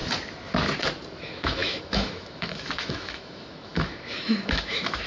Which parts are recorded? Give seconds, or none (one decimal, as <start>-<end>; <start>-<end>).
0.0-1.2